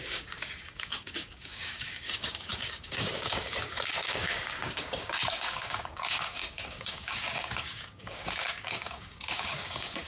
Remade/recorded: remade